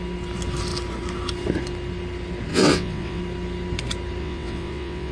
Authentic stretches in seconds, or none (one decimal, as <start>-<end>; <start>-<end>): 0.0-2.5; 3.2-4.2